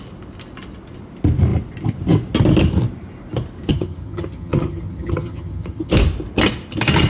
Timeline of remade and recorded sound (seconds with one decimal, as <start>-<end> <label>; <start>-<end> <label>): 0.0-3.7 recorded; 3.7-5.9 remade; 5.9-7.1 recorded